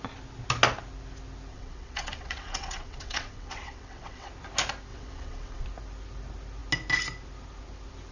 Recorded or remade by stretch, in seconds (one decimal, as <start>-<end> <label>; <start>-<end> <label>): 0.0-1.5 recorded; 1.5-4.3 remade; 4.3-4.9 recorded; 4.9-5.6 remade; 5.6-8.1 recorded